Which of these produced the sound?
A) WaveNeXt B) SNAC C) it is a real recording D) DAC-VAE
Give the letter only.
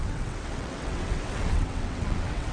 A